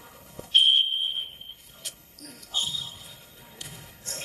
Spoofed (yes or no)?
yes